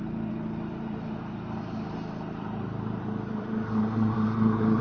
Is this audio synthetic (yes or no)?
yes